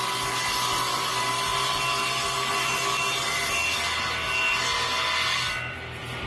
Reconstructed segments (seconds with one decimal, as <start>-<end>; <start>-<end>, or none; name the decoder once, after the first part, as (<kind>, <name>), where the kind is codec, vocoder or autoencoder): none